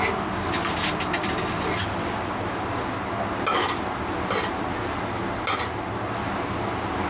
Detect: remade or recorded recorded